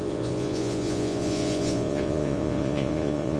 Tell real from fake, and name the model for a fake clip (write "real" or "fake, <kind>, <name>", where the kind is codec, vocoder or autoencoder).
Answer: fake, vocoder, Vocos